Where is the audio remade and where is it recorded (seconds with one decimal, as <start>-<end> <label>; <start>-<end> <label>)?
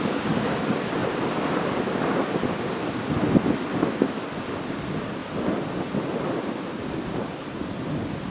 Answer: 0.0-1.0 recorded; 1.0-1.8 remade; 1.8-8.3 recorded